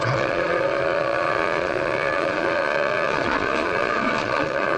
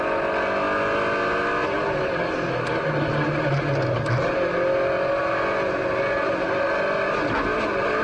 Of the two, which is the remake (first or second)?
first